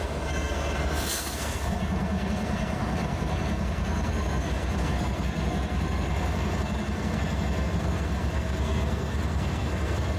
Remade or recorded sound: remade